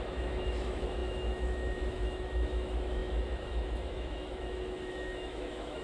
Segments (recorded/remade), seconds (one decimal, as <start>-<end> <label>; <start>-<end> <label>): 0.0-5.8 remade